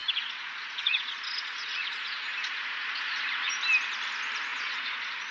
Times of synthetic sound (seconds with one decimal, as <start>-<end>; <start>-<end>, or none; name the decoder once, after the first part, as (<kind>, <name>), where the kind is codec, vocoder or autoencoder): 0.0-3.2 (vocoder, Vocos); 4.5-5.3